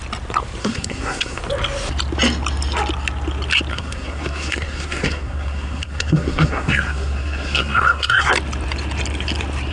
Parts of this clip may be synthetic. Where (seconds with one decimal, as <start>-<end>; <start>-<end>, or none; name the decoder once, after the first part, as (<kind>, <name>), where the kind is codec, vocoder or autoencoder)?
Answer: 0.6-1.4 (codec, SNAC); 3.7-8.3